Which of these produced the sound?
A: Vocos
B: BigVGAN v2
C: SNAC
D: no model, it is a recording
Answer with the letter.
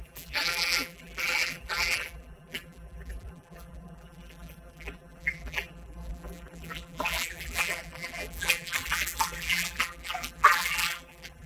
B